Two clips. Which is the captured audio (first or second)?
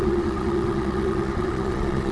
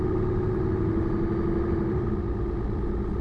second